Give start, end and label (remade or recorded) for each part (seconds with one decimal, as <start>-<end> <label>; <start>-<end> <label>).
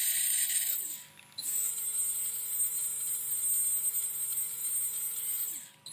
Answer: 0.0-0.9 recorded; 0.9-1.7 remade; 1.7-5.9 recorded